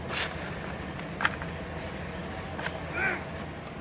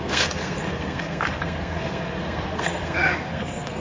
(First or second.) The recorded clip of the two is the first